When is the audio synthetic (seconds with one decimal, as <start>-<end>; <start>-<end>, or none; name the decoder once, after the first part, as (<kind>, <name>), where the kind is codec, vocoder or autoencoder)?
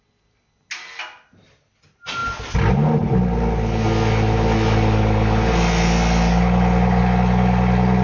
none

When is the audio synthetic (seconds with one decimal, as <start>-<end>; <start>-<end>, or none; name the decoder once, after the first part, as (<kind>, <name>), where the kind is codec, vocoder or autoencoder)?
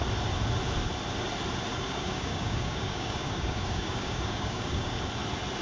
1.7-5.0 (codec, DAC)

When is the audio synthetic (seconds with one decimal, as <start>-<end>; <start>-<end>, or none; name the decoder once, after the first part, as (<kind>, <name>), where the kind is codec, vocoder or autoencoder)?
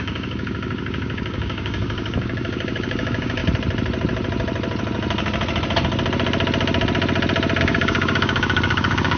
0.0-3.4 (codec, DAC); 7.6-9.2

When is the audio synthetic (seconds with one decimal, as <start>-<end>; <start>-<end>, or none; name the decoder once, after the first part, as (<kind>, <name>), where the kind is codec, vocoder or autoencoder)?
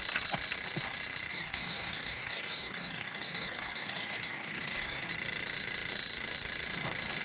1.3-5.1 (codec, DAC)